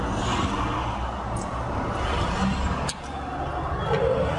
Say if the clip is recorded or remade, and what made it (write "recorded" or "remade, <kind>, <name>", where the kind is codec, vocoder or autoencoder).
recorded